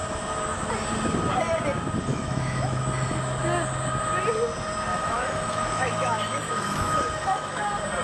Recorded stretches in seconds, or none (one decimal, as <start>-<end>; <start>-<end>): 0.0-2.1; 2.8-4.9; 7.6-8.0